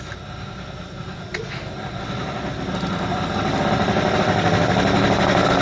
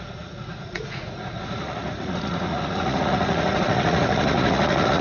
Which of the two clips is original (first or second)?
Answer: first